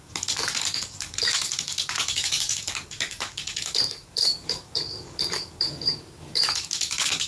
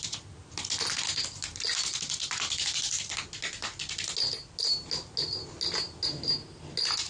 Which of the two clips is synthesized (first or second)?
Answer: first